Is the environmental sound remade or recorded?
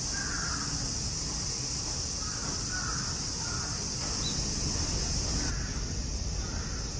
recorded